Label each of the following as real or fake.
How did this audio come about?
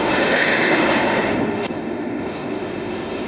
fake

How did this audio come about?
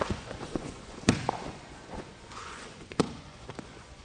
fake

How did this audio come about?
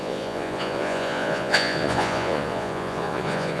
fake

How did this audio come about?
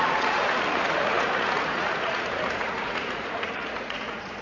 fake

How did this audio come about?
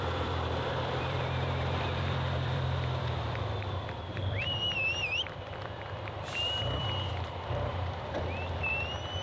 fake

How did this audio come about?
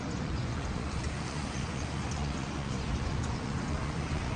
fake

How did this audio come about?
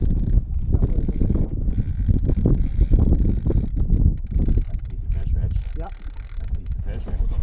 real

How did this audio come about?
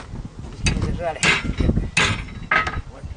real